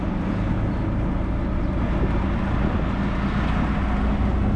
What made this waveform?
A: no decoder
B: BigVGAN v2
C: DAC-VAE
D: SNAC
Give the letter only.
A